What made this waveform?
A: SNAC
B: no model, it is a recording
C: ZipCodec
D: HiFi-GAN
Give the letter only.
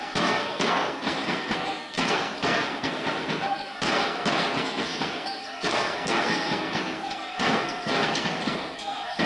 A